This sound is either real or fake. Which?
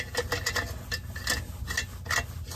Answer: real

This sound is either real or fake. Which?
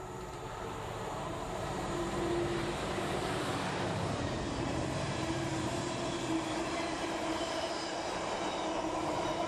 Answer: fake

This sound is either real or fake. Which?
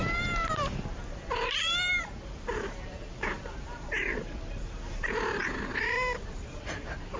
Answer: fake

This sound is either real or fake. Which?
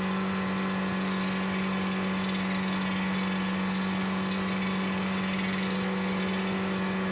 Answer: real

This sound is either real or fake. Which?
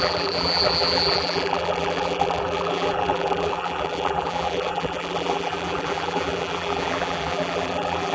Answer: fake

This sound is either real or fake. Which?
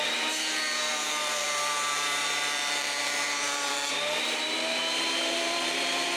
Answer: fake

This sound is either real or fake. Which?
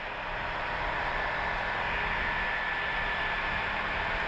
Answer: real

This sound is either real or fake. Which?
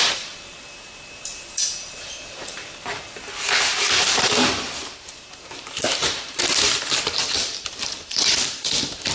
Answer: fake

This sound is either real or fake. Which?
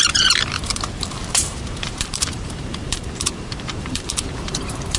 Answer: fake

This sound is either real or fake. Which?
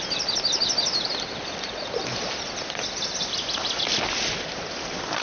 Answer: real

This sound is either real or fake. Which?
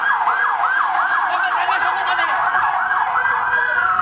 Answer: fake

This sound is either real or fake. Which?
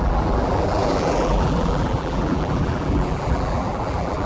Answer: fake